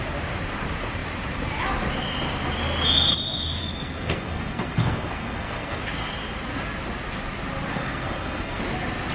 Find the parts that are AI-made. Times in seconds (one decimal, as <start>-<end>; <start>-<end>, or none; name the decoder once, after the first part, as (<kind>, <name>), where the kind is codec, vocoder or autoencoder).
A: 3.6-5.8 (codec, SNAC); 7.7-8.6